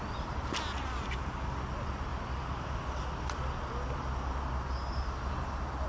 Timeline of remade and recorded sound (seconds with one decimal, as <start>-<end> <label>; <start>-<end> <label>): 0.0-5.9 recorded